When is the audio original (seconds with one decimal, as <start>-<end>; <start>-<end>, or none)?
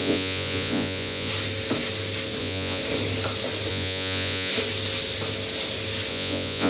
1.3-2.4; 2.8-3.7; 4.5-6.1